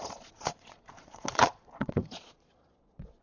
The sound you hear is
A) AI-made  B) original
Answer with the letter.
A